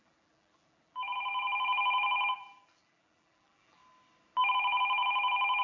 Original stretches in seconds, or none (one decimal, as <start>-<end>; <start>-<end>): 3.8-4.5